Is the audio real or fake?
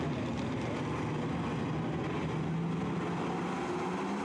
real